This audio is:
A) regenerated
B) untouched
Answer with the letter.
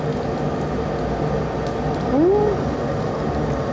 B